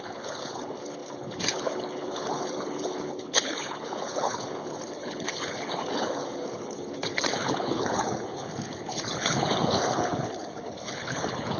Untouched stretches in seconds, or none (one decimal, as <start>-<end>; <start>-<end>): none